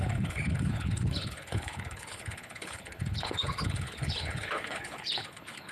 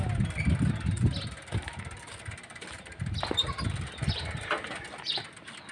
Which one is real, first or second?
second